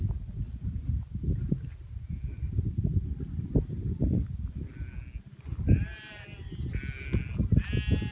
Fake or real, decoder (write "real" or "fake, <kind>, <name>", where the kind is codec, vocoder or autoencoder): real